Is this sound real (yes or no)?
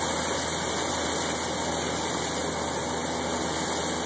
yes